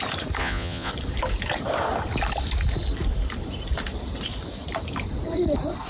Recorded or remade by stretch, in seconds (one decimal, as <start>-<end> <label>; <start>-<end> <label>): 0.0-0.4 recorded; 0.4-0.9 remade; 0.9-5.9 recorded